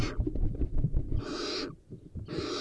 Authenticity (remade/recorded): recorded